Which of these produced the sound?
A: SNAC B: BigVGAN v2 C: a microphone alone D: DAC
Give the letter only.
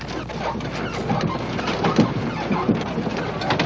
C